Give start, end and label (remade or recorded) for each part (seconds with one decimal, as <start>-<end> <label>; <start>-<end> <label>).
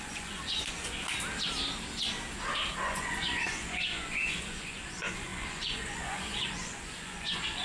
0.0-1.0 remade; 1.0-2.8 recorded; 2.8-7.6 remade